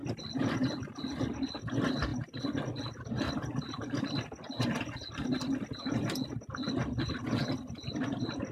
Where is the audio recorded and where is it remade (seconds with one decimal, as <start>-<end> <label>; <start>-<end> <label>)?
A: 0.0-8.5 recorded